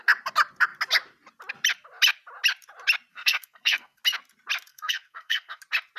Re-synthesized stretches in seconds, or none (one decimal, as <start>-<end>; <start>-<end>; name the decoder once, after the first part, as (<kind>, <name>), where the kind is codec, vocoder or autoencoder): 3.1-4.0 (codec, SNAC); 4.7-5.6